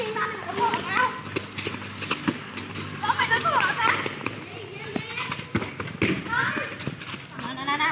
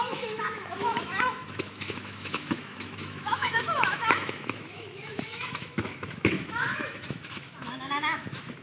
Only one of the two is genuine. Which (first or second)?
first